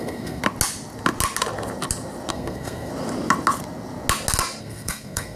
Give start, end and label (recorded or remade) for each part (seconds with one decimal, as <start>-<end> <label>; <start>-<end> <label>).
0.0-0.4 remade; 0.4-2.3 recorded; 2.3-2.9 remade; 2.9-4.6 recorded; 4.6-5.4 remade